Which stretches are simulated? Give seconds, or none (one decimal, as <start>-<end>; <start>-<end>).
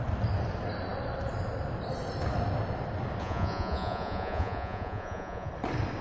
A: 3.2-5.5